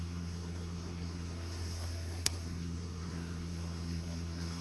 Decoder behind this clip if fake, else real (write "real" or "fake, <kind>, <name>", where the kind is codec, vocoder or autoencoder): fake, codec, SNAC